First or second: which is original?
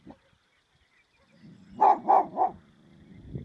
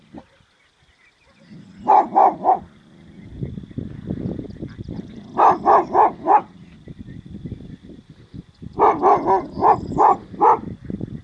first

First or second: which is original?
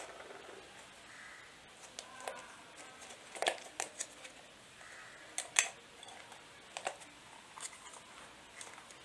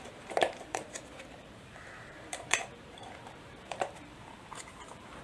first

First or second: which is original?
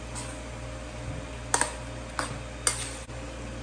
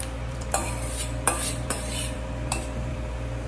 first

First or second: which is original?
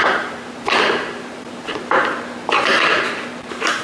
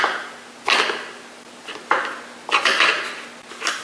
second